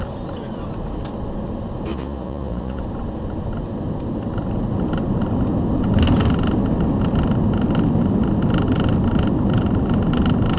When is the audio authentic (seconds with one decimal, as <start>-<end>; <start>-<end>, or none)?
0.0-1.9; 2.8-10.6